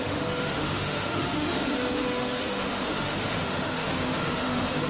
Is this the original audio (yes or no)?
no